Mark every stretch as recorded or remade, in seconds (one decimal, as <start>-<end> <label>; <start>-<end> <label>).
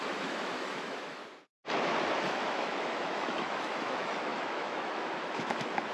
0.0-1.2 remade; 1.2-2.2 recorded; 2.2-5.9 remade